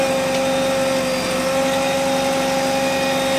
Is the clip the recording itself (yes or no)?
yes